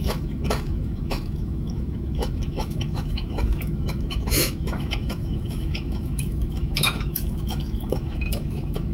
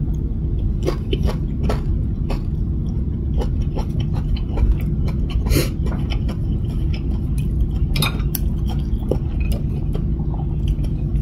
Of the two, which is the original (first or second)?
second